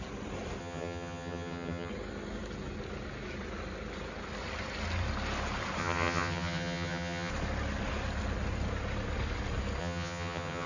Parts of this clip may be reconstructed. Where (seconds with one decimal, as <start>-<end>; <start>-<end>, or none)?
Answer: 0.6-1.9; 5.8-7.3; 9.8-10.7